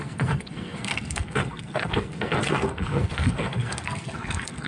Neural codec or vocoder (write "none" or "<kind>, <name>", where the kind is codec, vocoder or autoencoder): codec, SNAC